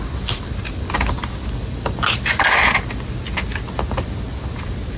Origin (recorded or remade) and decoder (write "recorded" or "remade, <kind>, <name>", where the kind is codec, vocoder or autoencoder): recorded